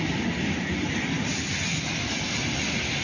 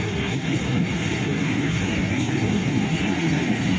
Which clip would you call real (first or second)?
first